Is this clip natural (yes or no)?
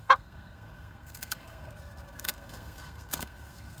no